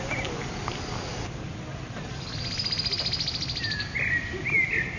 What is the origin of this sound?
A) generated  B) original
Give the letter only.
B